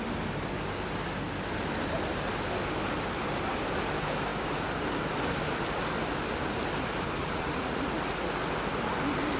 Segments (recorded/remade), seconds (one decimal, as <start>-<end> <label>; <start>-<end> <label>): 0.0-7.2 recorded; 7.2-7.9 remade; 7.9-9.4 recorded